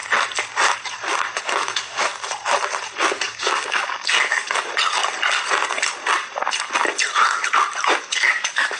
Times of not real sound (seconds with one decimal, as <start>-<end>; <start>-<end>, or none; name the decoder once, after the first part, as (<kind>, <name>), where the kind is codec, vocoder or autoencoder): 1.4-2.1 (codec, DAC); 3.1-4.7; 8.0-8.8